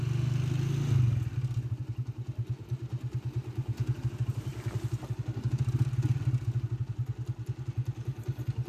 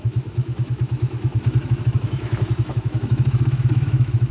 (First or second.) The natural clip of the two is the first